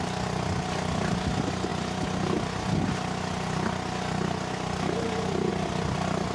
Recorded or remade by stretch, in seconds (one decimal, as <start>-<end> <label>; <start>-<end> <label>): 0.0-6.3 recorded

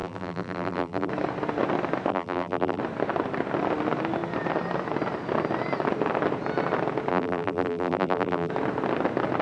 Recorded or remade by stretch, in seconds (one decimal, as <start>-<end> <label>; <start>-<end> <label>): 0.0-1.1 remade; 1.1-2.1 recorded; 2.1-2.8 remade; 2.8-7.1 recorded; 7.1-8.5 remade; 8.5-9.4 recorded

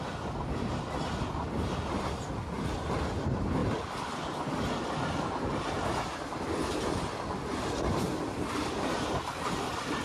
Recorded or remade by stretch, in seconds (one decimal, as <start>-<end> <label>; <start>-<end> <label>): 0.0-10.0 recorded

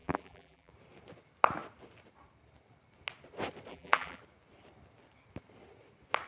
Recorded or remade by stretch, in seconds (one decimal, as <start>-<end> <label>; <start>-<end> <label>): 0.0-0.7 remade; 0.7-3.7 recorded; 3.7-4.2 remade; 4.2-6.3 recorded

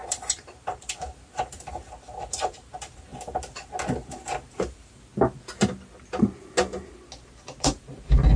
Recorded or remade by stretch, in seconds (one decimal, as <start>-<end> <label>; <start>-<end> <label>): 0.0-3.1 remade; 3.1-4.1 recorded; 4.1-5.1 remade; 5.1-7.6 recorded; 7.6-8.4 remade

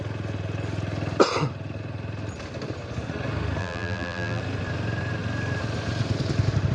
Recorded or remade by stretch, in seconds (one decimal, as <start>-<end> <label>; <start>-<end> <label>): 0.0-3.6 recorded; 3.6-4.4 remade; 4.4-6.7 recorded

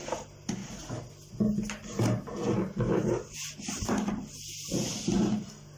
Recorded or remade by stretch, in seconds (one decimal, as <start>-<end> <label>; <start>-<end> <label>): 0.0-5.8 recorded

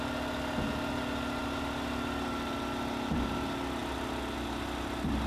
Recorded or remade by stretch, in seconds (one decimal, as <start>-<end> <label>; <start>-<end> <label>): 0.0-5.3 recorded